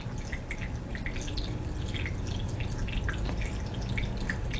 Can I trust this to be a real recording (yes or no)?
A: yes